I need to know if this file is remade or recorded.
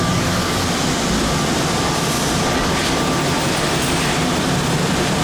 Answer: remade